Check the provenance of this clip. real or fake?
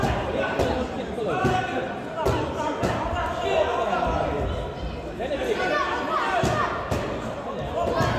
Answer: real